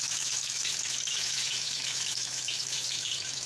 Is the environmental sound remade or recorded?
remade